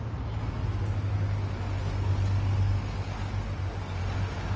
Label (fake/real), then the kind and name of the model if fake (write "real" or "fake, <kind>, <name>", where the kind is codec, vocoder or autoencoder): real